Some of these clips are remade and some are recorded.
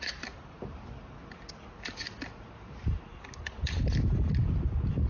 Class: recorded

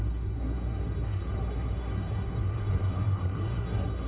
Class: remade